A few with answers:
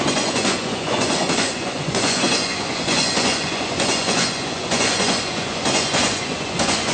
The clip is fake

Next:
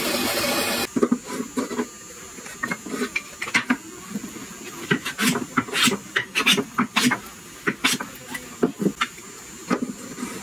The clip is real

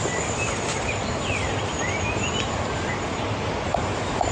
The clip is real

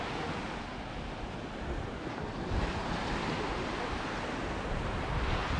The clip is real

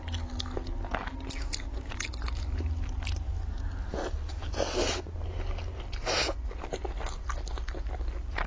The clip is real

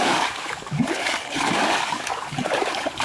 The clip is fake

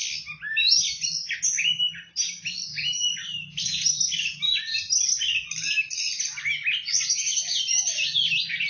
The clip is real